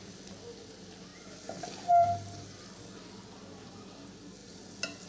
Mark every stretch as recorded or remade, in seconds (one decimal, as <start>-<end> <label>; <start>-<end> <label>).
0.0-5.1 recorded